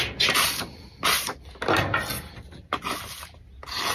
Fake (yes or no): no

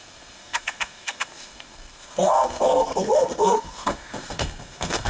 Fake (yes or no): yes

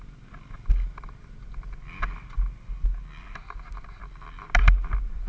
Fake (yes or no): no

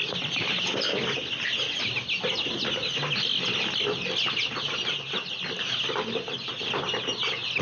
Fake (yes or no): no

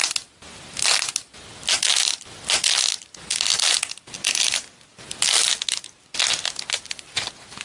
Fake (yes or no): no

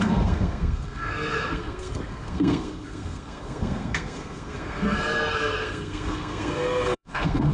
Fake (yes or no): yes